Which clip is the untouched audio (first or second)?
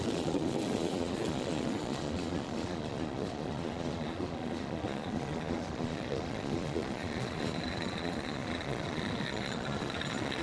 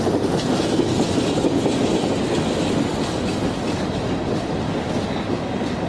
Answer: second